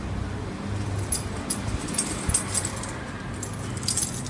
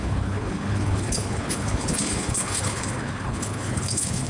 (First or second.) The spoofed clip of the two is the second